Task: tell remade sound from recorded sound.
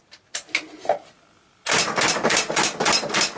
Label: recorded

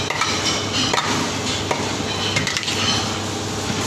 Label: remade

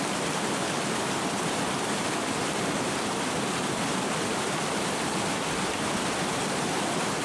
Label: remade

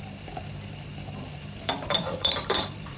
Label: remade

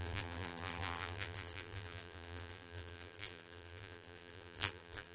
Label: remade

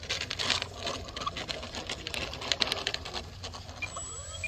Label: recorded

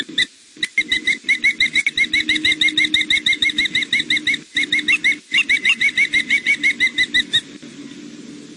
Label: recorded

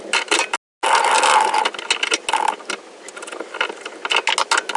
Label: recorded